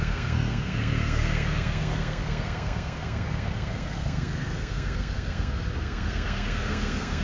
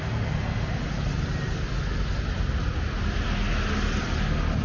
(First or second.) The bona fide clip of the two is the second